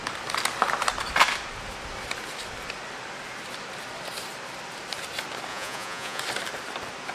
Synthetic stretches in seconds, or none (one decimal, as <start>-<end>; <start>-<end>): 5.5-6.2